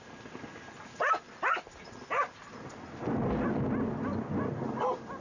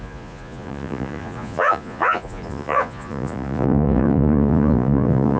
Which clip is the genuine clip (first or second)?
first